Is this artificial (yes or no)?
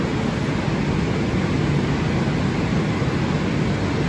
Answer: no